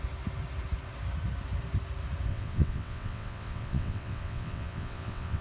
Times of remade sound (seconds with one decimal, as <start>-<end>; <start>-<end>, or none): 2.3-5.4